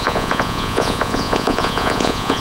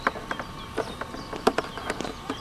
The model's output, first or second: first